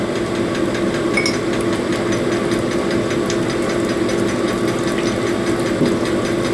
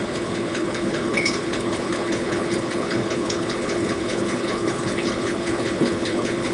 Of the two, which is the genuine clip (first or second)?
first